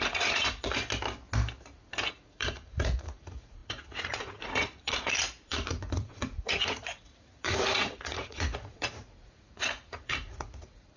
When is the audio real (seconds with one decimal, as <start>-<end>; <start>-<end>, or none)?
0.8-2.1